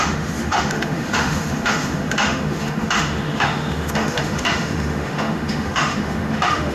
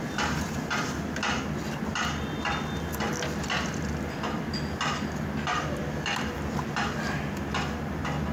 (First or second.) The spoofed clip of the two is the first